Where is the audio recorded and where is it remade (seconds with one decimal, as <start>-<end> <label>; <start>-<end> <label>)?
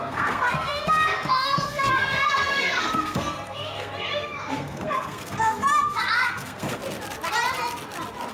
0.0-6.8 remade; 6.8-8.3 recorded